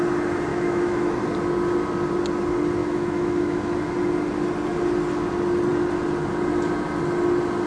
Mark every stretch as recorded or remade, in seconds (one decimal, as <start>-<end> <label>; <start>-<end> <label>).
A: 0.0-0.5 recorded; 0.5-1.1 remade; 1.1-2.8 recorded; 2.8-3.7 remade; 3.7-7.7 recorded